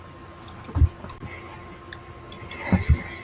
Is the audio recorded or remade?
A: recorded